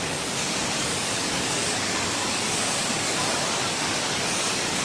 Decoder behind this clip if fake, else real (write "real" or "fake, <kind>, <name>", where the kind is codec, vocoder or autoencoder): fake, codec, DAC